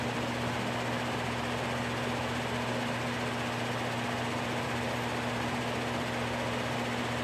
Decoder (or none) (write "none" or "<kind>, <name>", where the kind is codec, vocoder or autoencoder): none